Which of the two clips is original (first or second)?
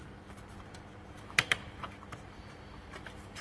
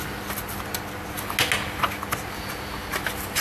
second